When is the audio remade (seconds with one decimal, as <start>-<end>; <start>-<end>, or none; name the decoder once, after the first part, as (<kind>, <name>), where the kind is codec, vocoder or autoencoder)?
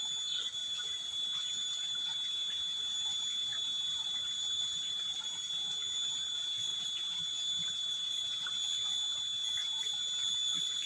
0.6-5.3 (vocoder, BigVGAN v2); 6.7-8.5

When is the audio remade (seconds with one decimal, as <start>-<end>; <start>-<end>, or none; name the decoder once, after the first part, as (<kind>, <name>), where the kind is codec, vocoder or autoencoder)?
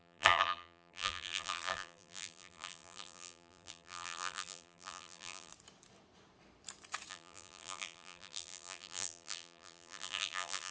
0.0-5.5 (vocoder, BigVGAN v2); 7.1-10.7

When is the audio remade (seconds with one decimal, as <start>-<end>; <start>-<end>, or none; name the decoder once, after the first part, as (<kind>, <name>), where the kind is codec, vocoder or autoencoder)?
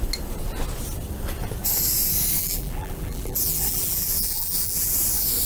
2.4-4.9 (vocoder, BigVGAN v2)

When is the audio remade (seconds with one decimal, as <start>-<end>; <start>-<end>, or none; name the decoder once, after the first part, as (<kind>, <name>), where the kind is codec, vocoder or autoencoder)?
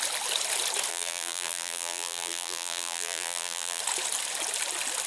0.9-3.8 (vocoder, BigVGAN v2)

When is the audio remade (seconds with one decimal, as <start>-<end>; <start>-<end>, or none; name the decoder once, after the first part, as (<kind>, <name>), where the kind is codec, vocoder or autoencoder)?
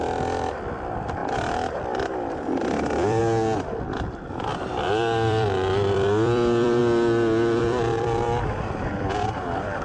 0.0-3.2 (vocoder, BigVGAN v2); 4.3-6.8; 7.6-9.8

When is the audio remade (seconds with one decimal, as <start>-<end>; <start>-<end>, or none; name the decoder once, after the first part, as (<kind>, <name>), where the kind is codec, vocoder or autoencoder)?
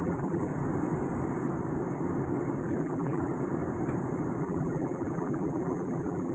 0.0-0.5 (vocoder, BigVGAN v2); 2.6-3.3; 4.4-6.3